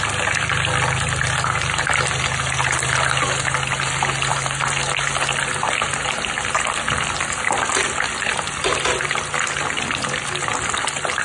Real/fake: real